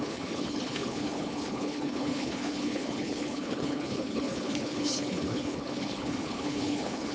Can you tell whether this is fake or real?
fake